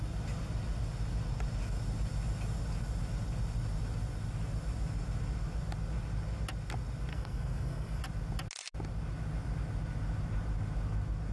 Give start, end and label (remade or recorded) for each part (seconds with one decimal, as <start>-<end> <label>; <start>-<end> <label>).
0.0-7.1 recorded; 7.1-8.0 remade; 8.0-11.3 recorded